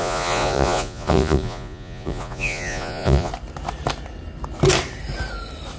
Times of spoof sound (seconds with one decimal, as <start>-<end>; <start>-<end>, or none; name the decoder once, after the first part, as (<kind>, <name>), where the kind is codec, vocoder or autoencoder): 0.0-3.3 (vocoder, Vocos)